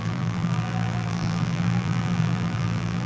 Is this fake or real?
fake